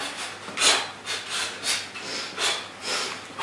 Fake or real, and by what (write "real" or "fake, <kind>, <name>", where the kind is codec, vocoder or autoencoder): real